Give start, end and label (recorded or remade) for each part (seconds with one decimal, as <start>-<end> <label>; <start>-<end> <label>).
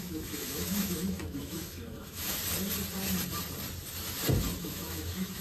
0.0-2.4 remade; 2.4-4.6 recorded; 4.6-5.4 remade